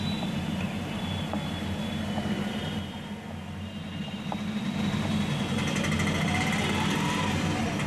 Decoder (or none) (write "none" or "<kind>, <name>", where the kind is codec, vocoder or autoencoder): none